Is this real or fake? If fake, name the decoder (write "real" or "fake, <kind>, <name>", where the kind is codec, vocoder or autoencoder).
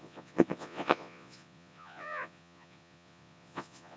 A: fake, vocoder, Vocos